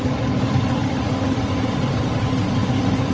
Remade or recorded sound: recorded